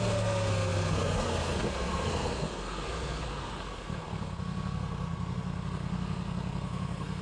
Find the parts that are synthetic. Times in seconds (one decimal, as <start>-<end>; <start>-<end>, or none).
0.0-7.2